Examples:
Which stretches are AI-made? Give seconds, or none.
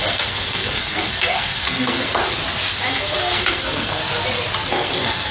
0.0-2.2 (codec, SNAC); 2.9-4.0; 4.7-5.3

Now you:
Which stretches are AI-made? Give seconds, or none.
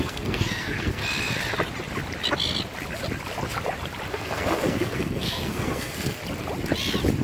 0.0-1.0 (codec, SNAC); 4.1-6.2